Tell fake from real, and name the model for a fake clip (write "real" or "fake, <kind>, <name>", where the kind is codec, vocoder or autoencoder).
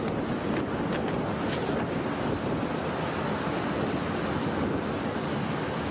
real